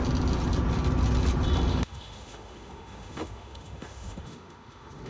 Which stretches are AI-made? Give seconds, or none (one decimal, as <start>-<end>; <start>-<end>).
1.7-5.1